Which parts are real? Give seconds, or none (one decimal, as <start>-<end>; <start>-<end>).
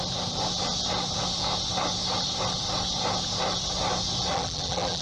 0.0-4.3